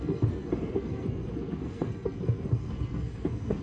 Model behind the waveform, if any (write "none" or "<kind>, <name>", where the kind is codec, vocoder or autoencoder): codec, SNAC